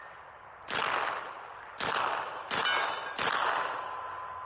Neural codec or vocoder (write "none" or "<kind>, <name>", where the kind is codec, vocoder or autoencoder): none